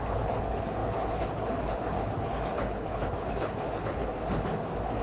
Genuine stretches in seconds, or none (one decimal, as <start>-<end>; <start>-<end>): 4.0-5.0

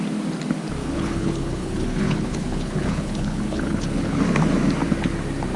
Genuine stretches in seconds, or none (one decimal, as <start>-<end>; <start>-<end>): 0.0-0.8; 4.2-5.6